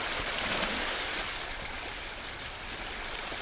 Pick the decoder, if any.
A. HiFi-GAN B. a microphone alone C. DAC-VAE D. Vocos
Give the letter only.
B